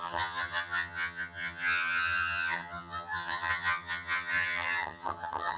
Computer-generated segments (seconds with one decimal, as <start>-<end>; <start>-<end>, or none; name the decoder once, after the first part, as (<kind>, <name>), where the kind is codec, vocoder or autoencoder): 0.0-5.6 (vocoder, HiFi-GAN)